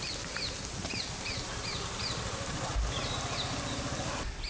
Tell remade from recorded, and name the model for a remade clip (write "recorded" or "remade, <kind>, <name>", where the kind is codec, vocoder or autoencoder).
recorded